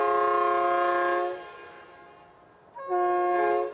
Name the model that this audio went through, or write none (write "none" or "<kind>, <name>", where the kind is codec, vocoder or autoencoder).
none